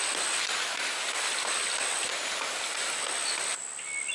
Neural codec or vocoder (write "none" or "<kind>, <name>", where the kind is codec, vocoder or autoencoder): none